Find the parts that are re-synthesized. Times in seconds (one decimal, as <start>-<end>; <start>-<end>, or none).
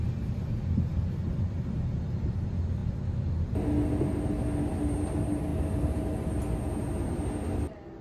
none